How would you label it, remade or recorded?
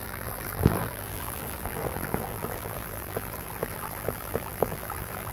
remade